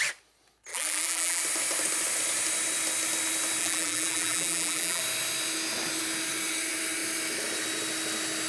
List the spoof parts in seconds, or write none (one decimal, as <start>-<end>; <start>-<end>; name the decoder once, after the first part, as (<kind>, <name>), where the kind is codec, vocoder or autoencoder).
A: 0.7-1.4 (vocoder, BigVGAN v2); 3.6-5.0